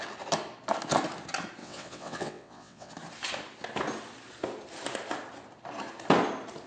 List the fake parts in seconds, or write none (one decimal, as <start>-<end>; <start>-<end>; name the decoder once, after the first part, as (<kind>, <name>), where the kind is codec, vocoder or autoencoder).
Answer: 1.6-2.9 (vocoder, WaveNeXt)